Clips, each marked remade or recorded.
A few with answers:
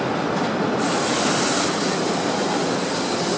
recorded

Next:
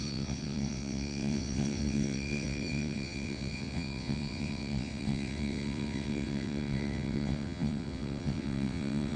remade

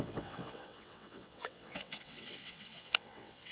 remade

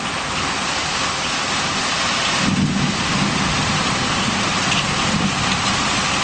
recorded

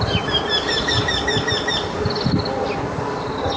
recorded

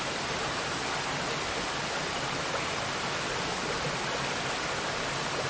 recorded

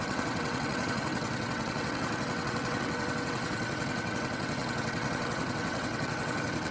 remade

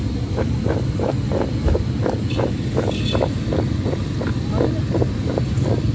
recorded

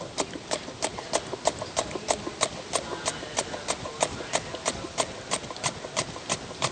recorded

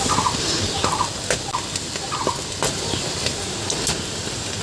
recorded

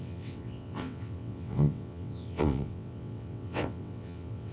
remade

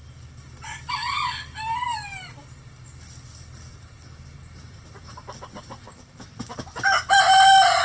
recorded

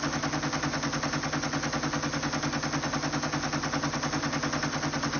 recorded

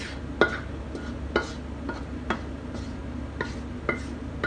recorded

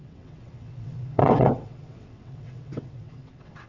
remade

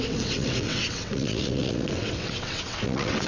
remade